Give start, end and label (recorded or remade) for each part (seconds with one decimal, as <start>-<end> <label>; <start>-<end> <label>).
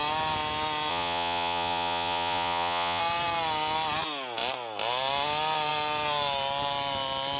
0.0-0.9 recorded; 0.9-3.0 remade; 3.0-7.4 recorded